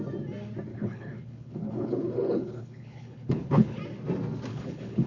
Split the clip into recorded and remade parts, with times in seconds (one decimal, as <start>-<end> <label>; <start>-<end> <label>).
0.0-0.7 recorded; 0.7-3.8 remade; 3.8-4.5 recorded; 4.5-5.1 remade